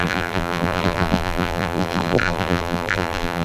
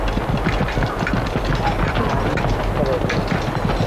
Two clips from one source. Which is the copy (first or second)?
first